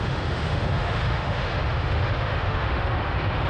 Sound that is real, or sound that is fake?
fake